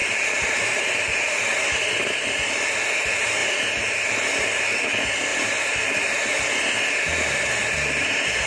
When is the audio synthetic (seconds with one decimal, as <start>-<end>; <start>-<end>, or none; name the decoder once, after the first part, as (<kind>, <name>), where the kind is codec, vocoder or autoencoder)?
0.0-1.4 (vocoder, BigVGAN v2); 5.3-6.0